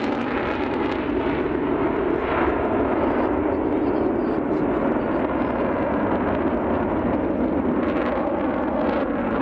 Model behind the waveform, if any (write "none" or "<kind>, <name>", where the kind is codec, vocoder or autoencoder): none